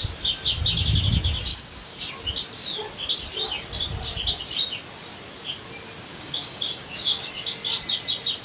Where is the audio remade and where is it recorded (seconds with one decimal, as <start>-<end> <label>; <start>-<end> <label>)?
0.0-1.5 recorded; 1.5-2.0 remade; 2.0-6.1 recorded; 6.1-7.3 remade; 7.3-8.4 recorded